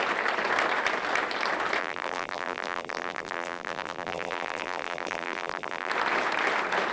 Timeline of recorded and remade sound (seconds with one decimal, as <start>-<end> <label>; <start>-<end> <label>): 0.0-1.8 recorded; 1.8-5.9 remade; 5.9-6.9 recorded